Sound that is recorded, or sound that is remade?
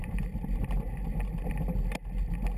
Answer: recorded